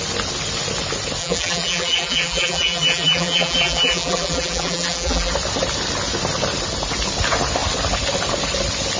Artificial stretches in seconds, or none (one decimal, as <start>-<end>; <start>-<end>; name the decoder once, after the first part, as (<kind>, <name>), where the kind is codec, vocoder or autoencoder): 1.2-5.3 (vocoder, BigVGAN v2)